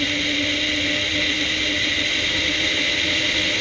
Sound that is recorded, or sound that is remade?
recorded